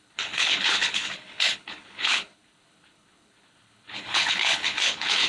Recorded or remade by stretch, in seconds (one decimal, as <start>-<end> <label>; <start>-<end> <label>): 0.0-5.3 remade